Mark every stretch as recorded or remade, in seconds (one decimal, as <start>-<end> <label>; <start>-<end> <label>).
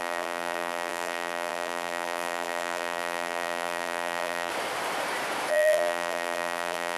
0.0-4.5 remade; 4.5-5.5 recorded; 5.5-7.0 remade